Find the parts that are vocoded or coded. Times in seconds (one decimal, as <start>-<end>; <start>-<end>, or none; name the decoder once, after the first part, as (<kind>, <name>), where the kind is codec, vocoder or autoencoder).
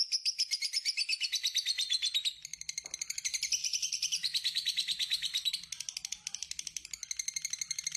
3.6-5.5 (vocoder, BigVGAN v2)